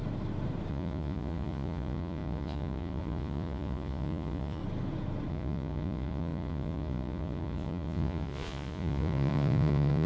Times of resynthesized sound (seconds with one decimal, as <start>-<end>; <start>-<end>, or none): 0.7-4.6; 5.3-10.1